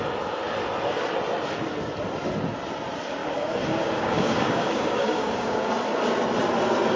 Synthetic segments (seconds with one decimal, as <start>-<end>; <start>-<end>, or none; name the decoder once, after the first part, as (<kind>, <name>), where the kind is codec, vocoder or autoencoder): 3.2-5.7 (codec, DAC)